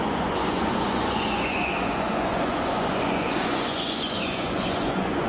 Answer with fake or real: fake